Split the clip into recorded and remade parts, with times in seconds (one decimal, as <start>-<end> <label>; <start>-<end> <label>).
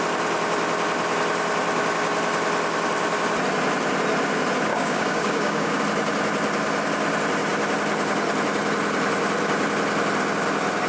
0.0-4.7 recorded; 4.7-5.8 remade; 5.8-10.9 recorded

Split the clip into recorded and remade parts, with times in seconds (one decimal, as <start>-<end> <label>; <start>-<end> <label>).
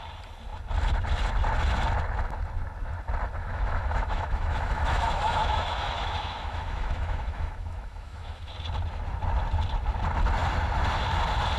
0.0-3.4 recorded; 3.4-8.5 remade; 8.5-11.6 recorded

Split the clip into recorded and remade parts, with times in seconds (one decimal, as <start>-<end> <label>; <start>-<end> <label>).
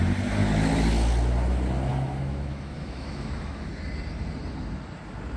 0.0-1.9 recorded; 1.9-3.7 remade; 3.7-5.4 recorded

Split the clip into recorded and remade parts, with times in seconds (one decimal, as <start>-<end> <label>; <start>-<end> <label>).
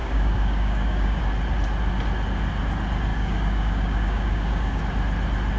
0.0-1.2 remade; 1.2-3.1 recorded; 3.1-4.8 remade; 4.8-5.6 recorded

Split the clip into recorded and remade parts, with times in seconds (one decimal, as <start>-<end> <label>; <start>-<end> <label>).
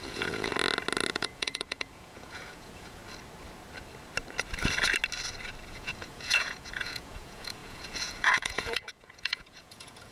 0.0-0.5 remade; 0.5-1.1 recorded; 1.1-3.0 remade; 3.0-5.7 recorded; 5.7-10.1 remade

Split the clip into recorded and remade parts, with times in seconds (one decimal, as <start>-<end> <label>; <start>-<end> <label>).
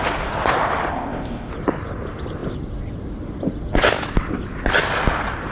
0.0-0.9 recorded; 0.9-1.5 remade; 1.5-5.5 recorded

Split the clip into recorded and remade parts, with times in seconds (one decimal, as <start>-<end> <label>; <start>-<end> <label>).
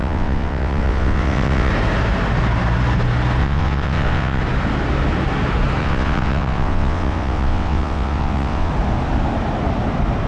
0.0-1.7 remade; 1.7-3.4 recorded; 3.4-4.4 remade; 4.4-5.8 recorded; 5.8-8.7 remade; 8.7-10.3 recorded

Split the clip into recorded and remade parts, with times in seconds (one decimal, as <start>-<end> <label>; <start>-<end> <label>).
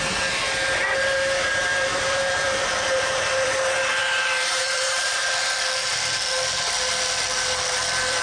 0.0-1.7 recorded; 1.7-3.5 remade; 3.5-4.0 recorded; 4.0-5.2 remade; 5.2-8.2 recorded